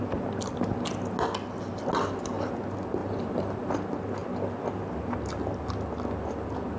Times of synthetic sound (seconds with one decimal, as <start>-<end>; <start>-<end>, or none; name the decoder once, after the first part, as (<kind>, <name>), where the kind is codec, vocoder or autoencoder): 3.0-3.7 (vocoder, BigVGAN v2)